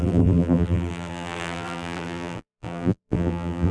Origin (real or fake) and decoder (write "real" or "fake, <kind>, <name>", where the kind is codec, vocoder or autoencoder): fake, vocoder, BigVGAN v2